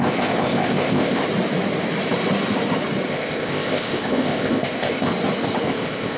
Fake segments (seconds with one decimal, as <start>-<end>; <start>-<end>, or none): 0.0-1.2; 3.1-5.1; 5.7-6.2